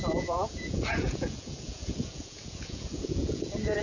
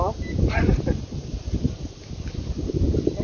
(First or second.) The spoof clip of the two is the first